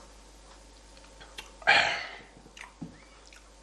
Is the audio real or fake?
real